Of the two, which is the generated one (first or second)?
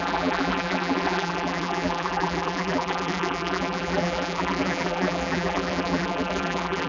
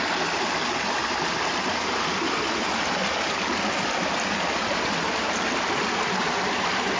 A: first